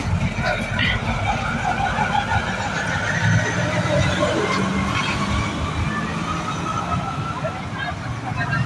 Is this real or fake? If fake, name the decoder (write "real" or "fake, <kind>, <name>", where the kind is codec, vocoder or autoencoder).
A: real